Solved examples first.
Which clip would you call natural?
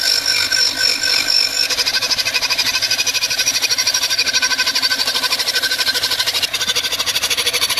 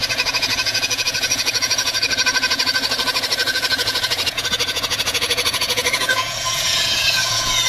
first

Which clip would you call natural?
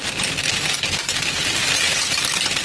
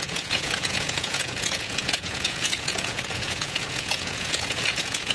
first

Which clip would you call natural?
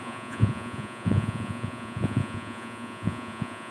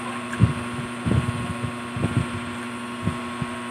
second